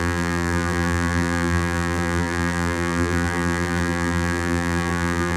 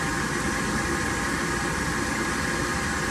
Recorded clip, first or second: second